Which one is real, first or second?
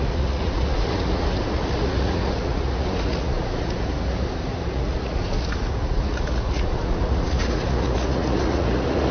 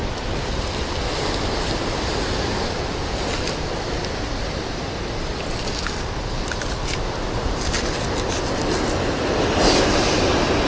second